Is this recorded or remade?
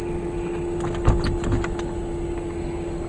recorded